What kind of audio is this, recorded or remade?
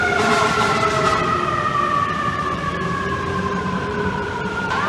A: remade